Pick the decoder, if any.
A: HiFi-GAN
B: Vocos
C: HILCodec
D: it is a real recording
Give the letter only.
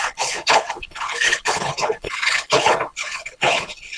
C